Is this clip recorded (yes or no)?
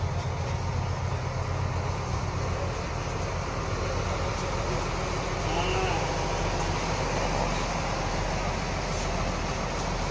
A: yes